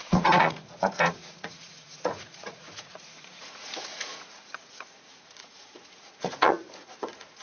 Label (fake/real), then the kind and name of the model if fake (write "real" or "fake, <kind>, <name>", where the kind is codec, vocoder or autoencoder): fake, vocoder, Vocos